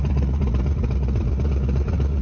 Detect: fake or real fake